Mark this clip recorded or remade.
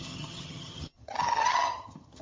remade